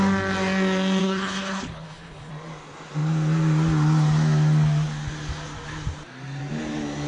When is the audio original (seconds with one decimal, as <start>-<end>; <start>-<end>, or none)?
0.0-1.0; 2.3-7.1